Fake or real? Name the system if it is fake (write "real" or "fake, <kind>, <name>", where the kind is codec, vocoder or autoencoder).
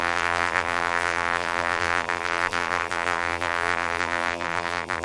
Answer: fake, vocoder, BigVGAN v2